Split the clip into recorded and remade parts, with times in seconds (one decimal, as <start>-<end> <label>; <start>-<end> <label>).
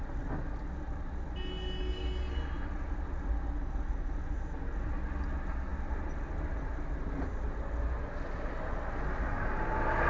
0.0-10.1 recorded